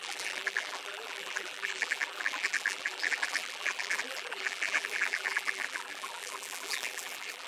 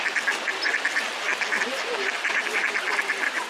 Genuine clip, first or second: second